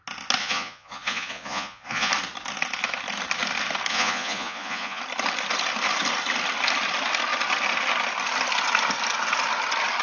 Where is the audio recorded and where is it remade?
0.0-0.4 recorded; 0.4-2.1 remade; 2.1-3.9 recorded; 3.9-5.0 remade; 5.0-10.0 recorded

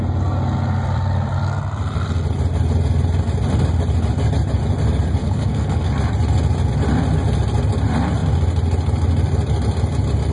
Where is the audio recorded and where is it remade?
0.0-5.2 recorded; 5.2-5.9 remade; 5.9-10.3 recorded

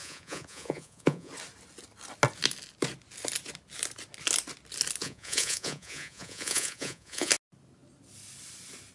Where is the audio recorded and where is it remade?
0.0-1.3 remade; 1.3-5.0 recorded; 5.0-7.3 remade; 7.3-8.9 recorded

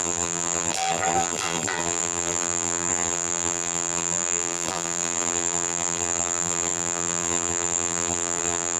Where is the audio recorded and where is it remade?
0.0-8.8 remade

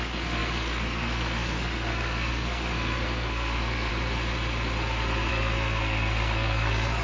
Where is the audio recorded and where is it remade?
0.0-3.9 remade; 3.9-5.3 recorded; 5.3-7.0 remade

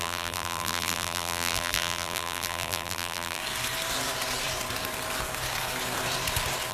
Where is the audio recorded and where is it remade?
0.0-3.4 remade; 3.4-6.7 recorded

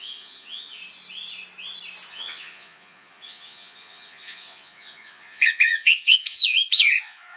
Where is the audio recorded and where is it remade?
0.0-0.8 remade; 0.8-2.1 recorded; 2.1-7.4 remade